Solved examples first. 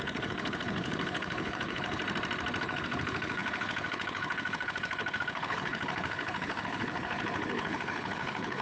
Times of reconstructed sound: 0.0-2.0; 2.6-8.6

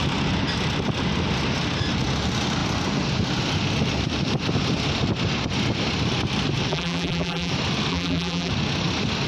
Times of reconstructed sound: 6.7-7.5; 7.9-8.5

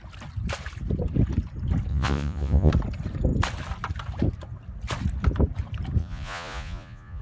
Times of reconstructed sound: 1.9-2.7; 6.0-7.2

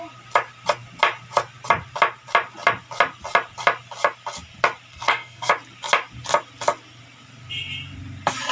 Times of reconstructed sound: 4.9-5.5

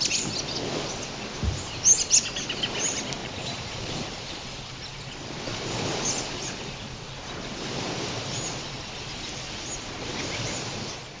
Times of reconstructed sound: 3.2-3.9

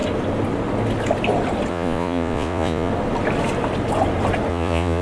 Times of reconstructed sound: 1.7-2.9; 4.5-5.0